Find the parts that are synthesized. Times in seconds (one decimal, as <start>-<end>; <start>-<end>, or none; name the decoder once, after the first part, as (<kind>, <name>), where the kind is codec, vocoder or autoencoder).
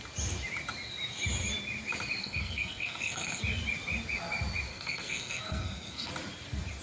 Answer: 2.2-3.4 (codec, SNAC); 4.7-6.1